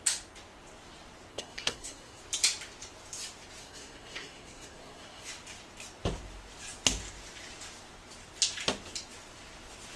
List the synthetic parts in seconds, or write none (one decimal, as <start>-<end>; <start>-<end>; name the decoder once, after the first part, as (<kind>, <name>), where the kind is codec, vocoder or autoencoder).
1.3-2.2 (codec, SNAC); 3.6-5.3